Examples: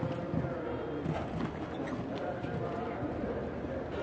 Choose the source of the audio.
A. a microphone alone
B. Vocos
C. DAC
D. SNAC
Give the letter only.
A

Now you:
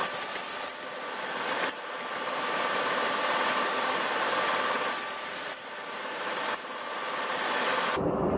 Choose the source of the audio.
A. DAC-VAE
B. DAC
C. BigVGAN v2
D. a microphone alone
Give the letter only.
D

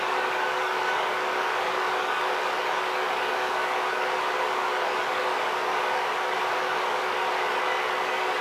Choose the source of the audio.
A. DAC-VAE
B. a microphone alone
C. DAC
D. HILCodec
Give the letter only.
C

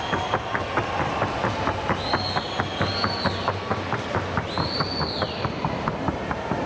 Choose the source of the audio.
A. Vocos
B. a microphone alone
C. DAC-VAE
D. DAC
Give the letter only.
B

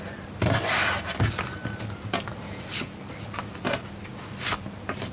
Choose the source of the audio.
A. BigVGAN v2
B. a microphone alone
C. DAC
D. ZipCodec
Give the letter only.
B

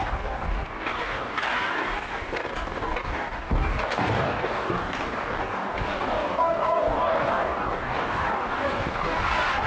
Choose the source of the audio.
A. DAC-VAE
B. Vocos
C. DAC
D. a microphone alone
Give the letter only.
C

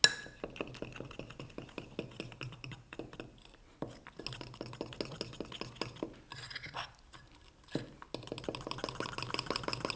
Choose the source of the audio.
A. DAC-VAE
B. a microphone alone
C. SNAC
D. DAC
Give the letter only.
B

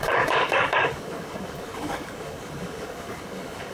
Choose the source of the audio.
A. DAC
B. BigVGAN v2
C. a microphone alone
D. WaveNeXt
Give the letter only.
A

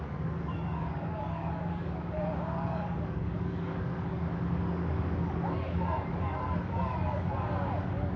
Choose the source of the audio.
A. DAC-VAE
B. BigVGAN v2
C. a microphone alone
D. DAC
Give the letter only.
D